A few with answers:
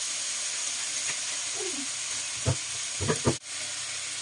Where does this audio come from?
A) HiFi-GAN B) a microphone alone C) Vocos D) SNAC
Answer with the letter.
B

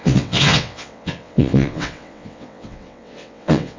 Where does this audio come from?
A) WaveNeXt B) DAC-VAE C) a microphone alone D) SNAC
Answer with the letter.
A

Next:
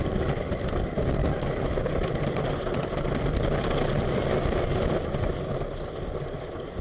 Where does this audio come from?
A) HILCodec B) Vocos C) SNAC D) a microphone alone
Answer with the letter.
D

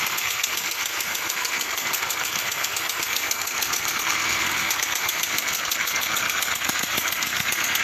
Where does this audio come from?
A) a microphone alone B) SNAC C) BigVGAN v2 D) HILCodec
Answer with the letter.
B